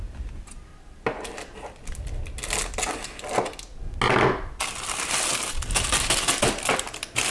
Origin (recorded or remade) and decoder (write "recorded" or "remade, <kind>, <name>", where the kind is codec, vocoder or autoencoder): recorded